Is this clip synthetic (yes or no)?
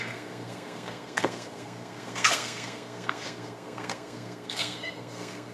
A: yes